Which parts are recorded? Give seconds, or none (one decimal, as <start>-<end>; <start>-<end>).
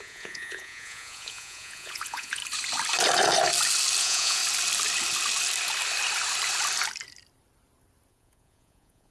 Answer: 2.4-4.0; 4.4-8.1